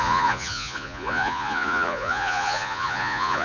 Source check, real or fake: fake